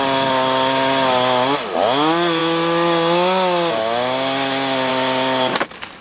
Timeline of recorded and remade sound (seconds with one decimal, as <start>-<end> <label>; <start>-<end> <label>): 0.0-6.0 recorded